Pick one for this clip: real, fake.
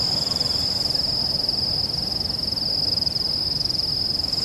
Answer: real